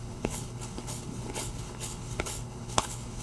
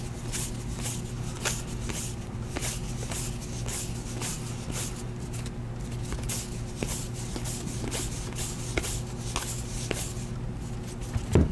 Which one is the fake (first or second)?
first